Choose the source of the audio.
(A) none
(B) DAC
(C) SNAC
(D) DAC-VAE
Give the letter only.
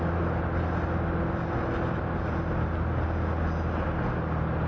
A